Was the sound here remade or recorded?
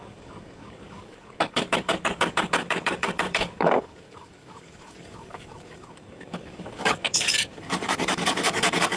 remade